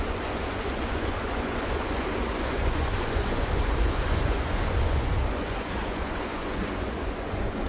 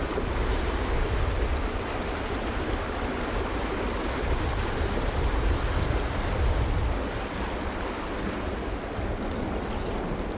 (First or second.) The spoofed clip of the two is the first